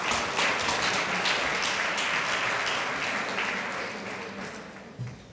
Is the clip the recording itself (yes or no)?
yes